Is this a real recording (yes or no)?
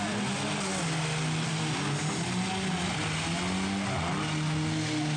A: yes